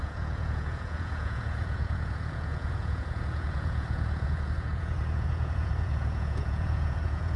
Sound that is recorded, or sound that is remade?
remade